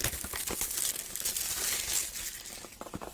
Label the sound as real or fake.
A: real